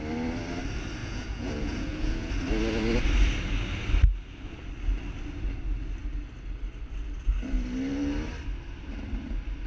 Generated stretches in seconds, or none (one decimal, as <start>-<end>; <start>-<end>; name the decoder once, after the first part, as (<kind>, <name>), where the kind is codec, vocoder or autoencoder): 1.0-2.3 (vocoder, Vocos)